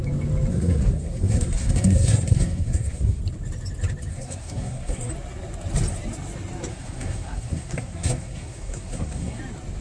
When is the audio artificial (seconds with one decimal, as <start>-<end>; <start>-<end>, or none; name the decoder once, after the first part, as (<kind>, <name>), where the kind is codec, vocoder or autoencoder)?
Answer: 0.5-3.2 (codec, SNAC); 4.1-5.1; 6.7-9.4